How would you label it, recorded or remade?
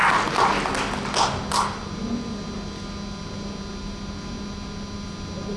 recorded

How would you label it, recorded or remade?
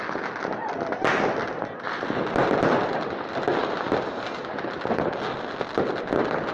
recorded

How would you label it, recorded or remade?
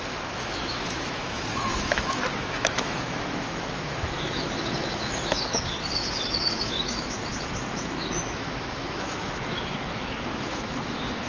remade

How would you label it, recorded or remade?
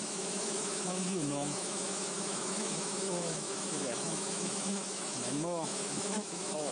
remade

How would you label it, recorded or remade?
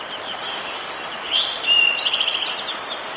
recorded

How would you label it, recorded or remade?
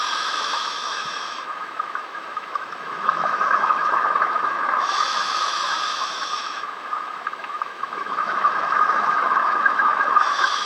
remade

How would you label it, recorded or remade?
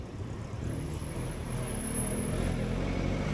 recorded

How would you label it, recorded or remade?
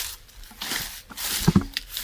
recorded